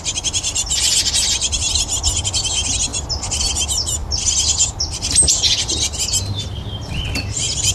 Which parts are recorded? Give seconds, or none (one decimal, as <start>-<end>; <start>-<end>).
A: 0.0-7.7